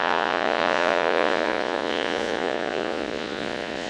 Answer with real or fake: fake